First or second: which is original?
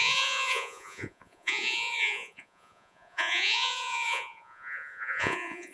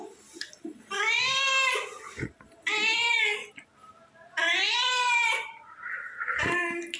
second